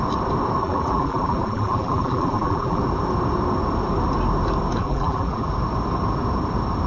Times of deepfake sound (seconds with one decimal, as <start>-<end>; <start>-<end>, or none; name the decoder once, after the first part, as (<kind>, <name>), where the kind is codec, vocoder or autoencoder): 0.6-2.8 (vocoder, BigVGAN v2); 4.8-5.5

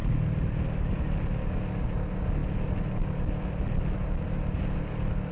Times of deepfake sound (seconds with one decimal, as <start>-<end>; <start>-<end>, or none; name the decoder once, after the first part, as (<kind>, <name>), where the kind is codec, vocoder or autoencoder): none

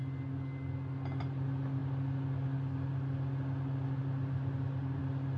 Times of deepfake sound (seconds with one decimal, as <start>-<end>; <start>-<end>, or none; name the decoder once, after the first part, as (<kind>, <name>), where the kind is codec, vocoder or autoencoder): none

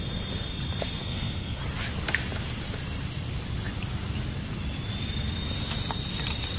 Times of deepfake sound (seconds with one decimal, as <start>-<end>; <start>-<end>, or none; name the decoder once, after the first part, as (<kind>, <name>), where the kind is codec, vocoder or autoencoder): 1.0-1.6 (codec, SNAC)

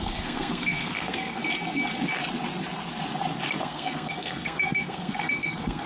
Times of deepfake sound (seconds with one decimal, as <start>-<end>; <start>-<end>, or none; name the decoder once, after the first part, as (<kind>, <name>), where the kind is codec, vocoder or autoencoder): 0.0-1.4 (codec, SNAC); 3.6-5.9

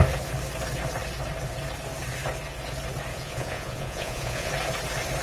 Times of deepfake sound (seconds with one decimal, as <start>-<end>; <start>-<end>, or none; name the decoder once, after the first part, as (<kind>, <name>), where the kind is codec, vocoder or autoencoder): 3.1-4.5 (vocoder, Vocos)